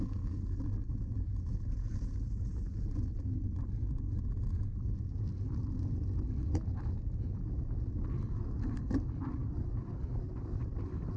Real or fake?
real